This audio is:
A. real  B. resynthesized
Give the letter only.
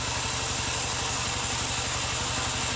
A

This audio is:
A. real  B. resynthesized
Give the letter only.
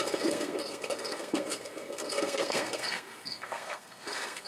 B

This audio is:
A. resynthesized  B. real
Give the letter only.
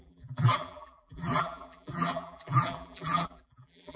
A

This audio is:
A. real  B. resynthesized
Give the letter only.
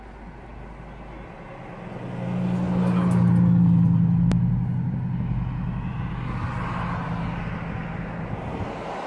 A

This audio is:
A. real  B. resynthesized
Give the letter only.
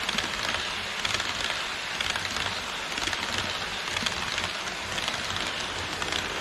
A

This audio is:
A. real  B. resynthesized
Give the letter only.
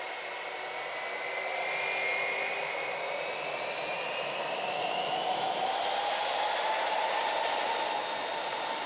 A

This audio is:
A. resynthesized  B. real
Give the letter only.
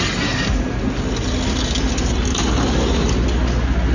B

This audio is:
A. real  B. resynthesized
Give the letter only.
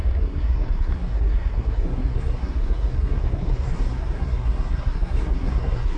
B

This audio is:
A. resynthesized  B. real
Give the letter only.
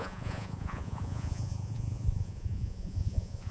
A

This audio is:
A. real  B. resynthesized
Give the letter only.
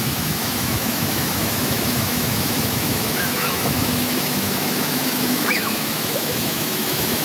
B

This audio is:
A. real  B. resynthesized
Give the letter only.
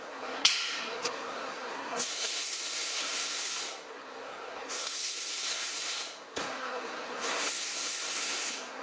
B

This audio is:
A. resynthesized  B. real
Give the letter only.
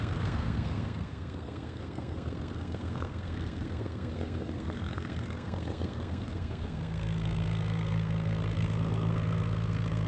A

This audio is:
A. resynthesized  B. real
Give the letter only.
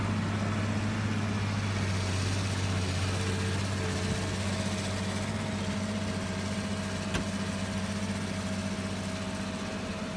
B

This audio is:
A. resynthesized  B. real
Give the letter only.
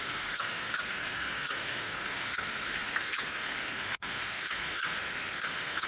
A